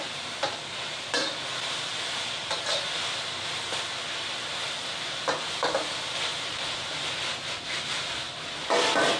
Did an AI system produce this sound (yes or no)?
no